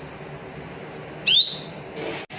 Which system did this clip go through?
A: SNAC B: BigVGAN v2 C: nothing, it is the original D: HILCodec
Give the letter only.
C